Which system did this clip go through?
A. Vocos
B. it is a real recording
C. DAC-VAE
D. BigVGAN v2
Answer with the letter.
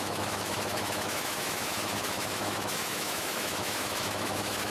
C